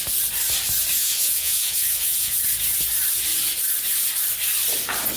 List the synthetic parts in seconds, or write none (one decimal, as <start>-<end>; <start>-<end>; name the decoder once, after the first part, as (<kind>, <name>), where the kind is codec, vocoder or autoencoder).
1.0-2.4 (vocoder, Vocos)